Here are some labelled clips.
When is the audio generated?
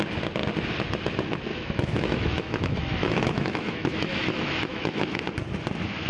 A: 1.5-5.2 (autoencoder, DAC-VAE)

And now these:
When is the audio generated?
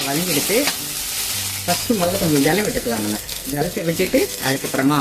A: 1.8-5.0 (codec, SNAC)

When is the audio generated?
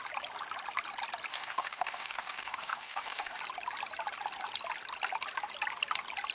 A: 1.3-3.4 (codec, DAC)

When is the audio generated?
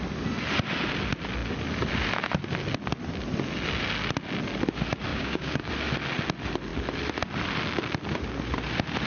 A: 5.1-5.7 (codec, DAC)